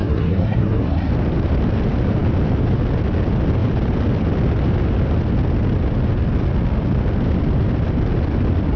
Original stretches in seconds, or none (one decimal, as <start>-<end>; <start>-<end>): 1.1-8.8